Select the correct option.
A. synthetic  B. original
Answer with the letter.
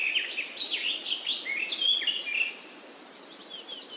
B